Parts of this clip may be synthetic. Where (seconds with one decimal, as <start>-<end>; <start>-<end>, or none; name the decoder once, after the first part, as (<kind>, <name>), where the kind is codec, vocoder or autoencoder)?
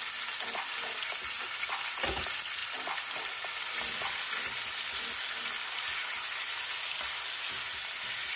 none